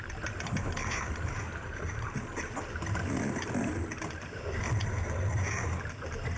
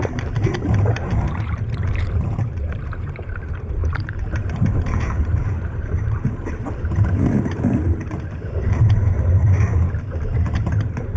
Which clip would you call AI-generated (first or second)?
second